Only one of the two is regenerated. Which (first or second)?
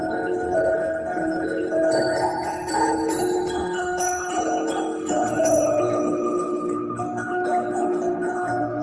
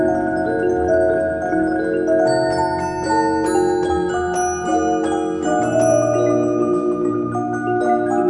first